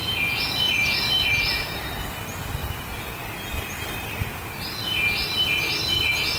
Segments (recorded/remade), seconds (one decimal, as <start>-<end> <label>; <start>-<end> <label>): 0.0-6.4 recorded